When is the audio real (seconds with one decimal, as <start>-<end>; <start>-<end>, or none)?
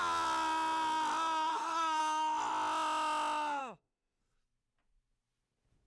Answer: 0.0-1.5; 2.0-3.6; 4.2-5.9